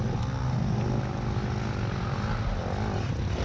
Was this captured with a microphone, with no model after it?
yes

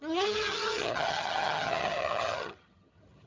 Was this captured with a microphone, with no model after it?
no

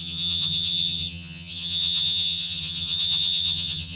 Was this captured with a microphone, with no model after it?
no